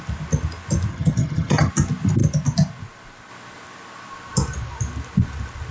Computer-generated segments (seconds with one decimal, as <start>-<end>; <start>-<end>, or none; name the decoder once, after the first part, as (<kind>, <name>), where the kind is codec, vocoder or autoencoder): 0.9-1.7 (vocoder, HiFi-GAN)